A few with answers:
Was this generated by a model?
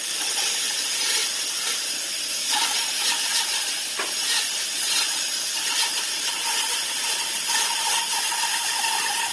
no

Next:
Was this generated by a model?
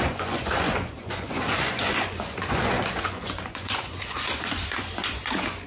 yes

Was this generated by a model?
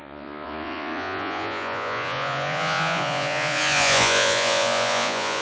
yes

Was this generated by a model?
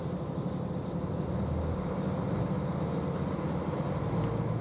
no